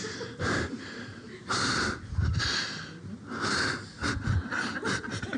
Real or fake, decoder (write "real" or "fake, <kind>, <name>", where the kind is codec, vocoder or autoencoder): real